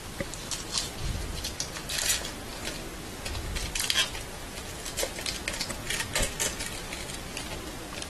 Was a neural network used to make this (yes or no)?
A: no